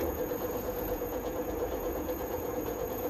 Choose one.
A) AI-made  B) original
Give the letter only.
A